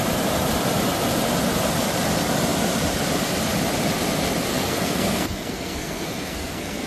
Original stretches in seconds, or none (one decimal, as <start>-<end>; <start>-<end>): 0.0-4.5